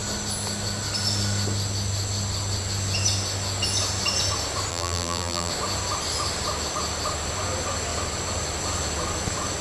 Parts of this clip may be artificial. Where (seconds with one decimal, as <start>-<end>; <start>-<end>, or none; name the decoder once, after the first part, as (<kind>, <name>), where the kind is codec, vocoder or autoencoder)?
4.7-5.5 (vocoder, BigVGAN v2)